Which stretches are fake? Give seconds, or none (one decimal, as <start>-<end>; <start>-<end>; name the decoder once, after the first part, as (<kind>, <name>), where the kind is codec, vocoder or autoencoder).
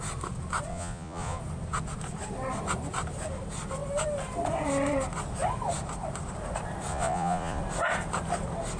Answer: 0.7-1.4 (vocoder, Vocos); 6.9-7.6